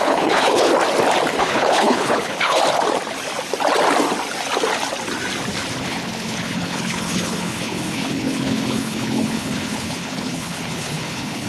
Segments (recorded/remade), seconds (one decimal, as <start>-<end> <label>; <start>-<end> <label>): 0.0-0.7 remade; 0.7-1.4 recorded; 1.4-2.6 remade; 2.6-5.8 recorded; 5.8-11.5 remade